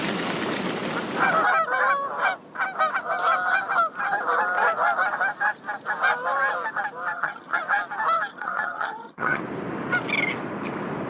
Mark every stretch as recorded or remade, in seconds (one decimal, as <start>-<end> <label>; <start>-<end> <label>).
0.0-7.1 recorded; 7.1-7.6 remade; 7.6-8.3 recorded; 8.3-9.4 remade; 9.4-11.1 recorded